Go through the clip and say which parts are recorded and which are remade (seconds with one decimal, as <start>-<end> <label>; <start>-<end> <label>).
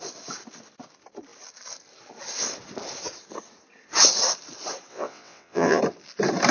0.0-4.9 recorded; 4.9-5.8 remade; 5.8-6.5 recorded